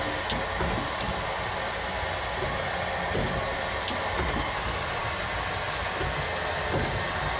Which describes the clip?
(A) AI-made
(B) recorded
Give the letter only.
B